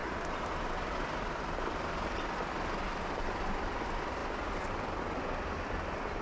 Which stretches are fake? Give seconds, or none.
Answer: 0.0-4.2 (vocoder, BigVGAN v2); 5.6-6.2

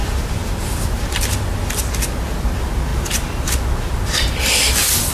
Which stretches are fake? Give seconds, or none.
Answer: 0.0-1.9 (vocoder, BigVGAN v2)

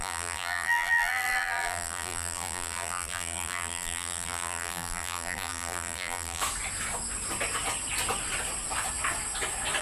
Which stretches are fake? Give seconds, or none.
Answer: 0.0-6.4 (vocoder, BigVGAN v2)